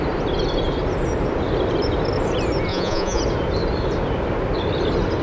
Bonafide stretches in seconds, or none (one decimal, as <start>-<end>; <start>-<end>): 0.0-2.7; 3.2-5.2

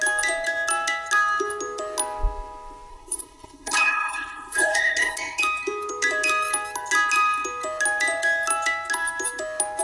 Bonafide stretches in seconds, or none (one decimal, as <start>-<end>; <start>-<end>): 0.0-2.9; 5.4-9.8

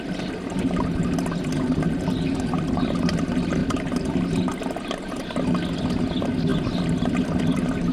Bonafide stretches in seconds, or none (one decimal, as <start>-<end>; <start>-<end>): 0.0-7.9

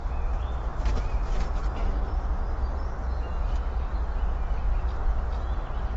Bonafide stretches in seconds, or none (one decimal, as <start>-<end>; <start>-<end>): 0.0-6.0

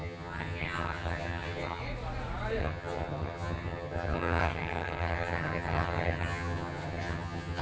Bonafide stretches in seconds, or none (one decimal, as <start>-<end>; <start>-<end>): 1.8-2.6

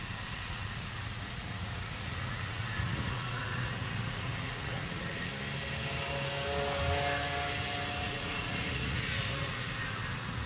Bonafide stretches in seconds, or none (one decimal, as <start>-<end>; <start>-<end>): 5.3-8.0

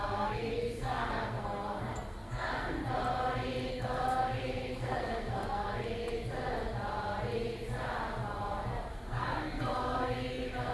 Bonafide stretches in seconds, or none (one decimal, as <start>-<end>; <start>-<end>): 2.8-3.7; 6.0-8.9

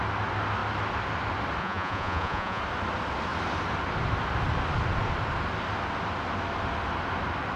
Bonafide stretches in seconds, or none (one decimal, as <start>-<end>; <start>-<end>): 0.0-1.6; 2.6-7.6